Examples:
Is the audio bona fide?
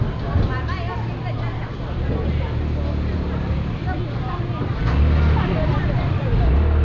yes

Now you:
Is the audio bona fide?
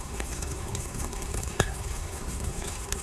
no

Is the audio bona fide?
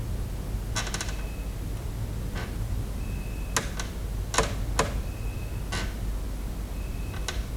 yes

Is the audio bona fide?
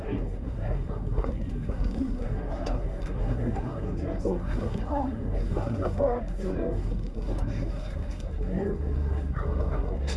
no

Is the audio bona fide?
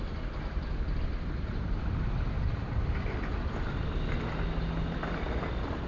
yes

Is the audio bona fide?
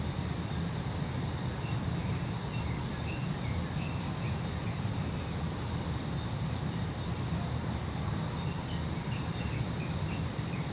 yes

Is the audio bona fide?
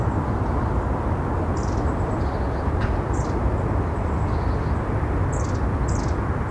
yes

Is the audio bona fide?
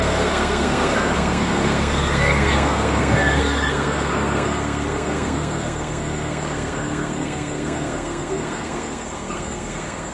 no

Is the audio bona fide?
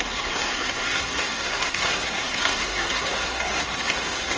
no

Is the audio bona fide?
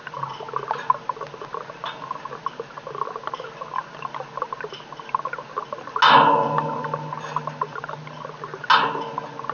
yes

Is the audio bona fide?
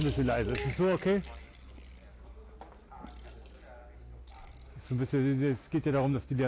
yes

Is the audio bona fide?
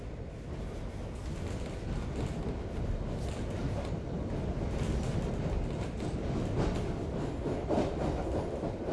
yes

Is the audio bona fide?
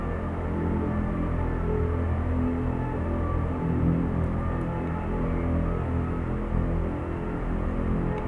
yes